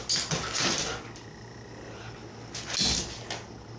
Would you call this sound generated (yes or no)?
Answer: no